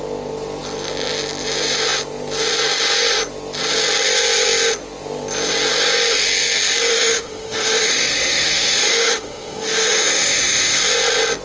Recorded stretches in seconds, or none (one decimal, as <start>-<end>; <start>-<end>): 0.0-6.9; 10.8-11.4